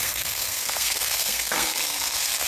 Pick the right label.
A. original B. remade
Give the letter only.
B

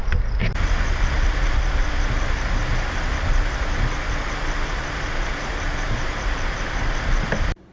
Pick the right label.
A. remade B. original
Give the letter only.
B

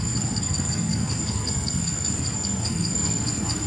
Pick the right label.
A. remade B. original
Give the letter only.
A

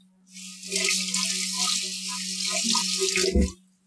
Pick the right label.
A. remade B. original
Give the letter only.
B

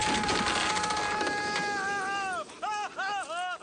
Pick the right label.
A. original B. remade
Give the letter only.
A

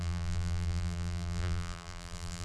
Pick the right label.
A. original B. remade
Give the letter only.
B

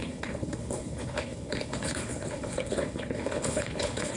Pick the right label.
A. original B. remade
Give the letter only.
B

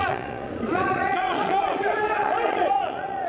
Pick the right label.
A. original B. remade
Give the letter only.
B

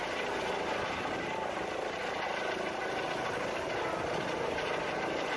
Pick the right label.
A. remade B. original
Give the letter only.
B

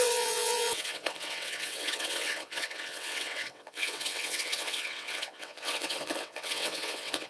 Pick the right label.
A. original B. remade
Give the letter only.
B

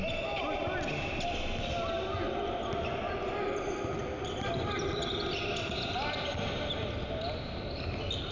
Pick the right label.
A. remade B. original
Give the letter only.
B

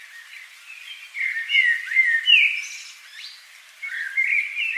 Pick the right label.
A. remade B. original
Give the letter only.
B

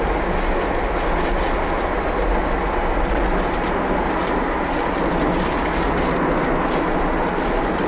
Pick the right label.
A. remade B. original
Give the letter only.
B